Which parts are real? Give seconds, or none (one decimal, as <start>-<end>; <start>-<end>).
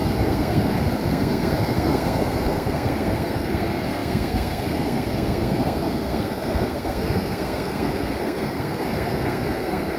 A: none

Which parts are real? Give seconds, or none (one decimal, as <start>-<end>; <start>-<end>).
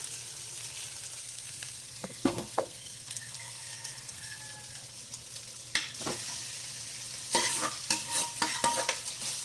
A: 0.0-1.2; 4.4-9.4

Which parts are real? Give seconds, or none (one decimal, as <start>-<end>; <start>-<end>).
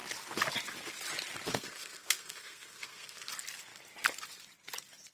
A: 0.0-1.5; 3.3-5.1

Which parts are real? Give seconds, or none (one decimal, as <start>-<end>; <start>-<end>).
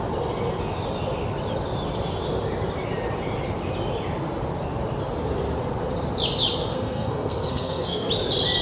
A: 0.0-6.7; 8.1-8.6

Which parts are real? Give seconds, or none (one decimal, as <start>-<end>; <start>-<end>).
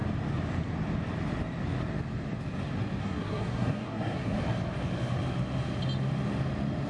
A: 0.0-3.0; 4.4-6.9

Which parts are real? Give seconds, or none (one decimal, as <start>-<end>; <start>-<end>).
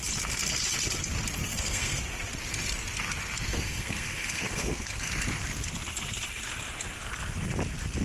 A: 0.0-1.4; 2.0-3.5; 5.1-8.0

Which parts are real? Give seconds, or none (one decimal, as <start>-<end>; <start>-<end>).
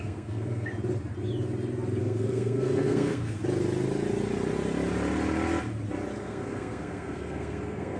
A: 0.7-2.0; 3.4-6.2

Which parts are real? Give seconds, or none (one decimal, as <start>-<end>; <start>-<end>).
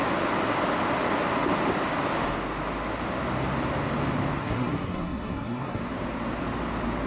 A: 0.0-4.4; 5.8-7.1